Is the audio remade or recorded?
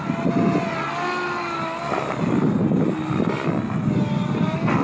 recorded